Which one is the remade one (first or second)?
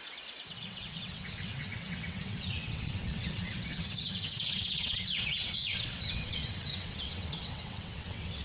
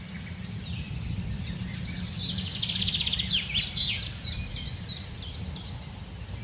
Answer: first